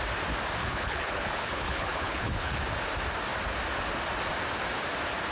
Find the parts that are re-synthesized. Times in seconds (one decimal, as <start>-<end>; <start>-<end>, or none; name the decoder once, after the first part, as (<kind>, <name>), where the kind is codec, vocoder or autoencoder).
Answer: 0.6-2.6 (codec, HILCodec)